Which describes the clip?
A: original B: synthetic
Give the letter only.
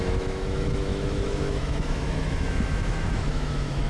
B